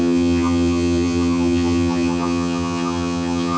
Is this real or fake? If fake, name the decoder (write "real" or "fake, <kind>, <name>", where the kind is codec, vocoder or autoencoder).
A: fake, vocoder, HiFi-GAN